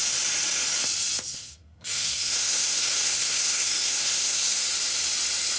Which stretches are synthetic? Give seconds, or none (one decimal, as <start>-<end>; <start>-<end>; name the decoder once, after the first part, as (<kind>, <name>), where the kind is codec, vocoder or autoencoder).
1.3-4.6 (codec, SNAC)

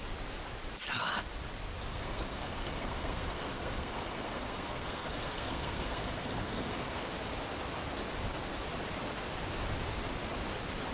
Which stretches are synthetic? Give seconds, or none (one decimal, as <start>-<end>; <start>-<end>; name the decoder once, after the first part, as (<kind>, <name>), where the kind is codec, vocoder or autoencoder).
1.9-7.1 (codec, SNAC)

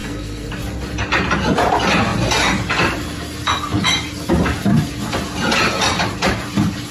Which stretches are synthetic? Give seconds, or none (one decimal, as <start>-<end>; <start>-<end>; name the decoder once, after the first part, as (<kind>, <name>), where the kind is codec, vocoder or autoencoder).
0.0-0.5 (codec, SNAC)

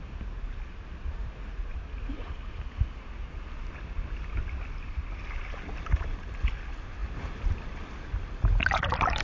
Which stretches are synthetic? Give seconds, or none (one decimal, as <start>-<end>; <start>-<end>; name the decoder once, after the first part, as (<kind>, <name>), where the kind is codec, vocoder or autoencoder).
none